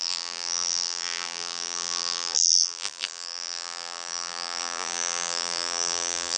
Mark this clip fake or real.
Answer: fake